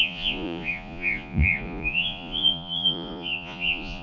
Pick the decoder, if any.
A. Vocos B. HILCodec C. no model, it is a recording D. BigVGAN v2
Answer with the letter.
A